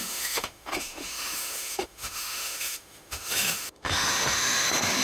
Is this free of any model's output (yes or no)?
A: no